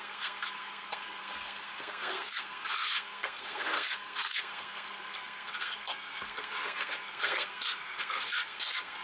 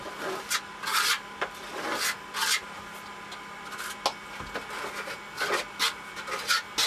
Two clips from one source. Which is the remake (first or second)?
first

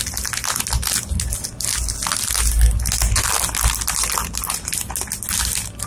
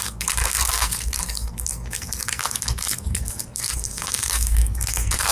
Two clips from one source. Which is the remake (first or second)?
second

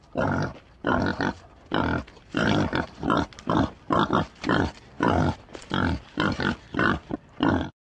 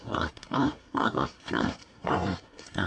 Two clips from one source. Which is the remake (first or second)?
second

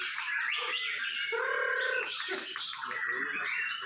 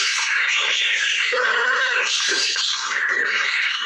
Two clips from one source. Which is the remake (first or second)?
second